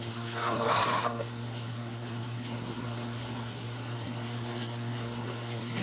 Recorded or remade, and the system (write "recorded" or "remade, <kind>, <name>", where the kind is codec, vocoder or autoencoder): remade, codec, SNAC